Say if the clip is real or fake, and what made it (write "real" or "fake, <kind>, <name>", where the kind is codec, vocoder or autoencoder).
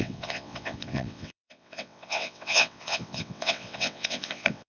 fake, vocoder, WaveNeXt